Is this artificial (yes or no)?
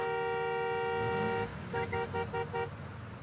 no